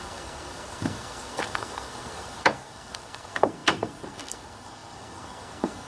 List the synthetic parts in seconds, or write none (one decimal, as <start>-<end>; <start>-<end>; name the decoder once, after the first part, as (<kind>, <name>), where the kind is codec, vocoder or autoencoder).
0.0-5.9 (codec, SNAC)